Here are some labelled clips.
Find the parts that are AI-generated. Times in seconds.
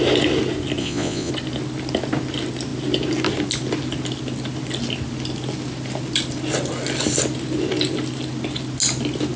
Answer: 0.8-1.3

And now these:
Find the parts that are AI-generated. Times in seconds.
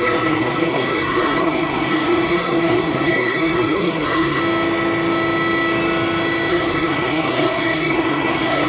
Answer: 0.0-4.4; 6.5-8.7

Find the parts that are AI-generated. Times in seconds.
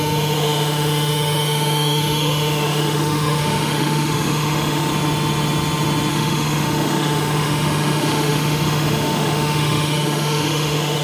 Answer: 0.0-4.9; 6.1-11.0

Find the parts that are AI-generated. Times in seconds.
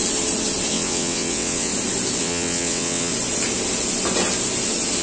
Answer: 0.7-1.7; 2.2-3.1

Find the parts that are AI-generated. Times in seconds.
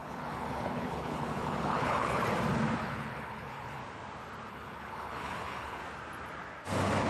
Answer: 0.0-2.2; 2.8-3.8; 4.5-5.8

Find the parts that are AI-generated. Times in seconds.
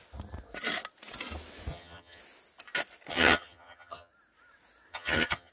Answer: 1.7-2.2; 3.1-4.1; 4.9-5.5